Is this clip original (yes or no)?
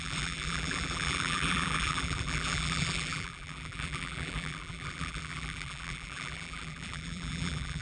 no